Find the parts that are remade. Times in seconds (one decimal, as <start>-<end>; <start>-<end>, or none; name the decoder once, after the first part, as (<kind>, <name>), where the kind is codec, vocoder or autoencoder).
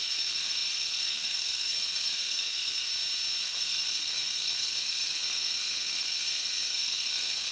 0.0-2.9 (codec, SNAC); 3.4-7.5